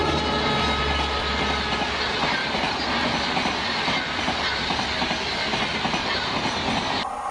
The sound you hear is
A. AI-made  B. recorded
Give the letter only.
B